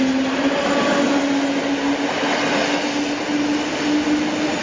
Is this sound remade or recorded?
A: recorded